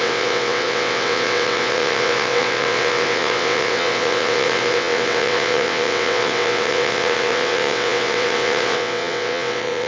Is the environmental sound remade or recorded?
remade